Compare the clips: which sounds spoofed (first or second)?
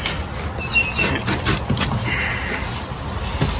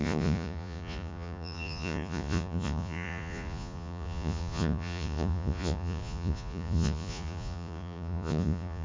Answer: second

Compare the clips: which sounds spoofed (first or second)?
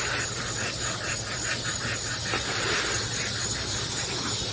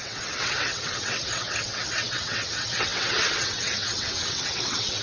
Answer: second